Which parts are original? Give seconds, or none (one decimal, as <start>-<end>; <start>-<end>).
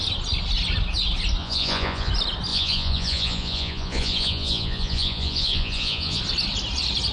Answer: 0.0-1.4; 2.1-2.5; 6.2-7.1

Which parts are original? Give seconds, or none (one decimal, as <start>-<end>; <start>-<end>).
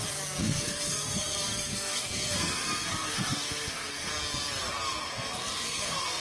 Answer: 0.0-0.4; 4.1-5.4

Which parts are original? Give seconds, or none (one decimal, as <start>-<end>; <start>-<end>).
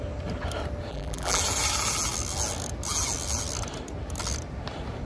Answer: 0.0-0.9; 1.4-5.1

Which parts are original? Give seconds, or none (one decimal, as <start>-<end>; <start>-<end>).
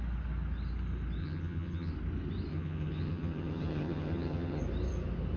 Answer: 0.0-1.2; 1.9-2.5; 4.6-5.4